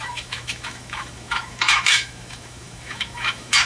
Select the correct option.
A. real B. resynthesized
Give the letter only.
B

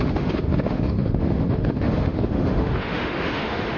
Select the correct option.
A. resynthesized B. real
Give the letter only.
A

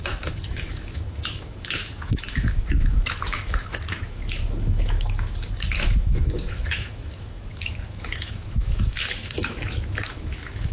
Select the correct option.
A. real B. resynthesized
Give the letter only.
B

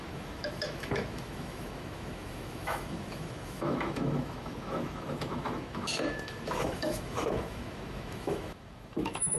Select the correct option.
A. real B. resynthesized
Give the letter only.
B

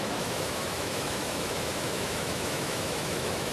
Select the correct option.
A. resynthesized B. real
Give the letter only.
A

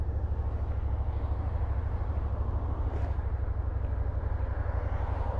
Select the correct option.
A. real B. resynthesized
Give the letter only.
A